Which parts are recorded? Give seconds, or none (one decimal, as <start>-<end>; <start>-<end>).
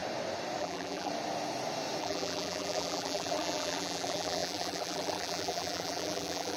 0.0-0.6; 1.1-2.0